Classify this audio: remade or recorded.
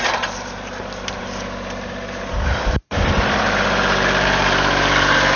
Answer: remade